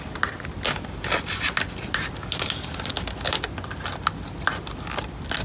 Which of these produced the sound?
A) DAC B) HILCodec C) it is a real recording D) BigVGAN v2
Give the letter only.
C